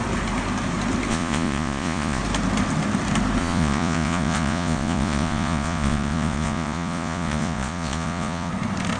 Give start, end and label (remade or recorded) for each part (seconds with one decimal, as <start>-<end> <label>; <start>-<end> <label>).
0.0-1.1 recorded; 1.1-2.2 remade; 2.2-3.4 recorded; 3.4-8.5 remade; 8.5-9.0 recorded